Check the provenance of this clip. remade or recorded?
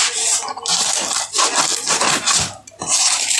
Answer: recorded